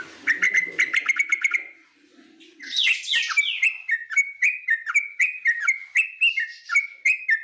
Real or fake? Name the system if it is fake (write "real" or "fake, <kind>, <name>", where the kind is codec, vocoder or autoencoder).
real